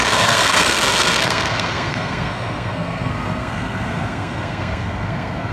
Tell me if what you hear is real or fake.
fake